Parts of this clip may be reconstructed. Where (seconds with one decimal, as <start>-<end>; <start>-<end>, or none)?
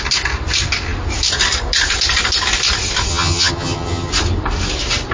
3.1-4.1